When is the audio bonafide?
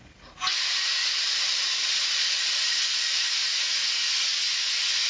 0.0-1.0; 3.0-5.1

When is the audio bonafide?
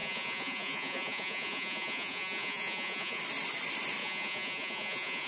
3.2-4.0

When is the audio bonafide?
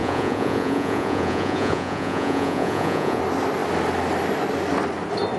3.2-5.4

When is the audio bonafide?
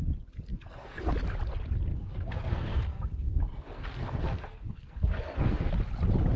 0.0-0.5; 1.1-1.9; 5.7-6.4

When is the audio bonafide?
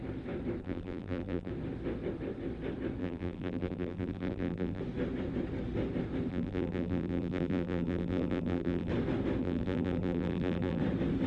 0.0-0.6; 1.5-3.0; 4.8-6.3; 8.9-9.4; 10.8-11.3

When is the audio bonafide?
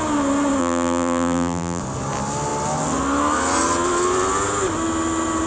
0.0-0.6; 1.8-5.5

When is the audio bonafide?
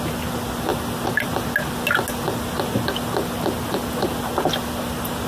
0.0-5.3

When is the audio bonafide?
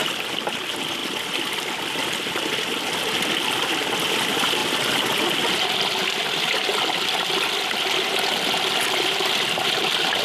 0.0-1.0; 1.8-10.2